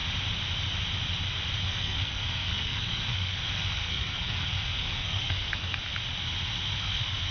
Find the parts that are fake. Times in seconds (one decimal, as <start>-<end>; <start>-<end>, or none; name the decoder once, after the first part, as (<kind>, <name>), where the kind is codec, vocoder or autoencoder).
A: 1.6-5.8 (codec, SNAC); 6.8-7.3